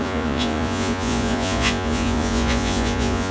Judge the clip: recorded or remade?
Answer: remade